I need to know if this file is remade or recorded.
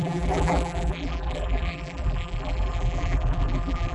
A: remade